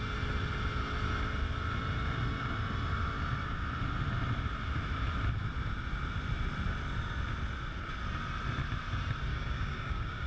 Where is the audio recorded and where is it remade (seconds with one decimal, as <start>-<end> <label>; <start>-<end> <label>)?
0.0-9.3 recorded; 9.3-10.3 remade